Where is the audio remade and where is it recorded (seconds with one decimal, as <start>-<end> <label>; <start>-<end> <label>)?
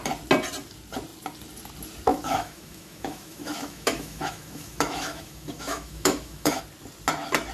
0.0-2.1 recorded; 2.1-6.6 remade; 6.6-7.5 recorded